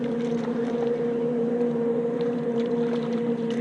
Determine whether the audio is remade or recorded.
remade